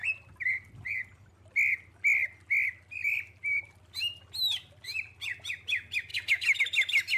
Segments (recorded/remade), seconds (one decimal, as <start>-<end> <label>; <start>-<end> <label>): 0.0-7.2 recorded